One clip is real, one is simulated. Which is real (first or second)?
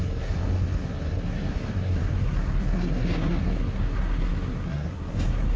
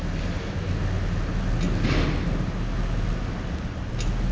second